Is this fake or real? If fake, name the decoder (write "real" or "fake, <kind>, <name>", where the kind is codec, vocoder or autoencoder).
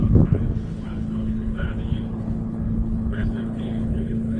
fake, codec, HILCodec